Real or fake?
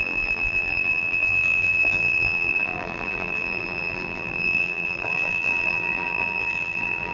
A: fake